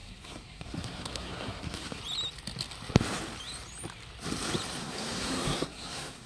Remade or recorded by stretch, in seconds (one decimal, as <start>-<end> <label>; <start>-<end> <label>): 0.0-2.0 remade; 2.0-4.8 recorded; 4.8-6.3 remade